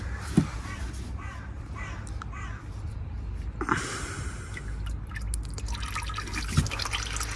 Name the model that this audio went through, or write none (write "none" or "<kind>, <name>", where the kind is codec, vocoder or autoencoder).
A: none